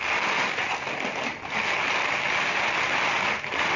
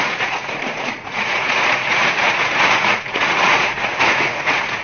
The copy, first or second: second